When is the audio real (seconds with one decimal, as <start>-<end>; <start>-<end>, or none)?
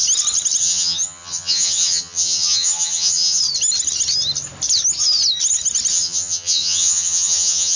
0.0-0.6; 3.4-5.9